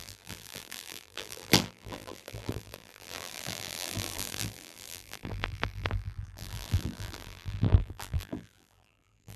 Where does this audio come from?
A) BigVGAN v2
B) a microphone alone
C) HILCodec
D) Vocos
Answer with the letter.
A